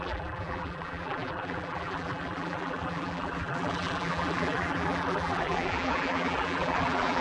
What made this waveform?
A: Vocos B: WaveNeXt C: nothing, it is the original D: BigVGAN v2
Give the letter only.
D